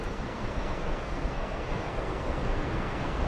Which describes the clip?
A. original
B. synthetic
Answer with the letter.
B